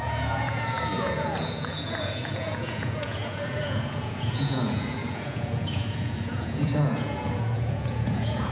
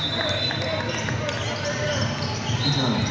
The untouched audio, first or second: second